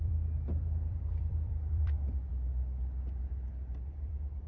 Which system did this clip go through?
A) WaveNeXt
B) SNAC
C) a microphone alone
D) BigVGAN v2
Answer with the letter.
D